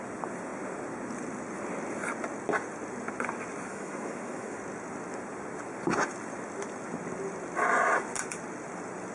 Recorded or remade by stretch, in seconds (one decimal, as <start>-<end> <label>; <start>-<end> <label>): 0.0-3.7 recorded; 3.7-4.6 remade; 4.6-9.1 recorded